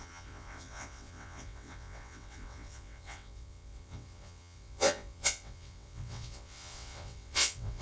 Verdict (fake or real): fake